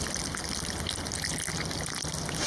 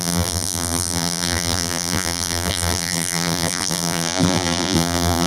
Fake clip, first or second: second